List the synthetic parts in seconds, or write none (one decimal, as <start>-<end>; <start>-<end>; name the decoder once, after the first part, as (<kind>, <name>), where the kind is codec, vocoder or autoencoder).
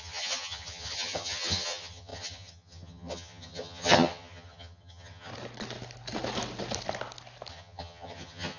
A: 0.0-5.3 (vocoder, HiFi-GAN); 7.5-8.6